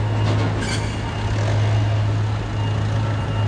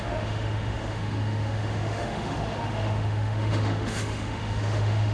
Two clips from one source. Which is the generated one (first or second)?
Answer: second